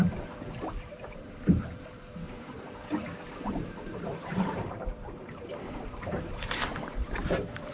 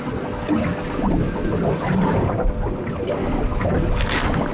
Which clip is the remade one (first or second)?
first